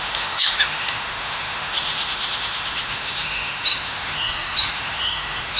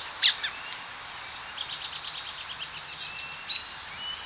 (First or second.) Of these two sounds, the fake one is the first